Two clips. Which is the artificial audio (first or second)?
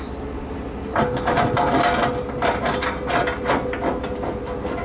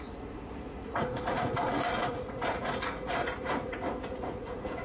second